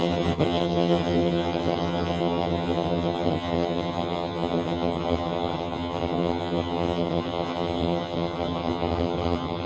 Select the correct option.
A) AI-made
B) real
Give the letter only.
A